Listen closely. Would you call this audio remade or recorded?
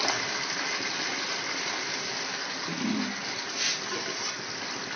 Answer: recorded